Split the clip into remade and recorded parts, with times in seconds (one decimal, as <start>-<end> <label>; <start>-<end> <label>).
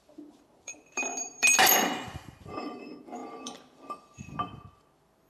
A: 0.0-5.3 remade